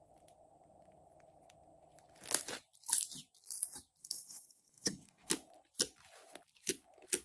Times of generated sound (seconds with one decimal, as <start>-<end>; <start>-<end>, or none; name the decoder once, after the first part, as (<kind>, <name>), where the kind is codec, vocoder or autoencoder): 4.0-5.3 (codec, DAC)